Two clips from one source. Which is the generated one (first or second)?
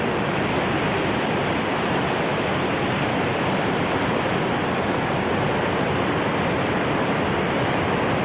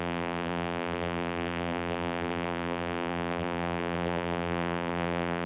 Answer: second